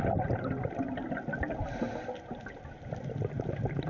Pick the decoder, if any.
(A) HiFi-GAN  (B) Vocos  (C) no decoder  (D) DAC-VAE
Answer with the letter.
C